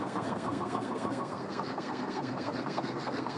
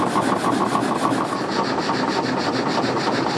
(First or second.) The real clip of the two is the second